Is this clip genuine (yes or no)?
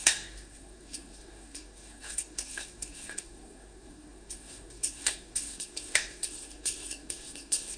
no